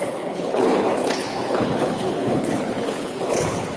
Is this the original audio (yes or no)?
no